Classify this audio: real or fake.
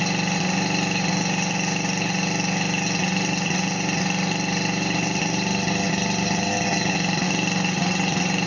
real